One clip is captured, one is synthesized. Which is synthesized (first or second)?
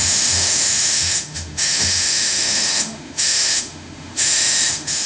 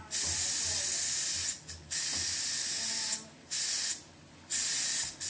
first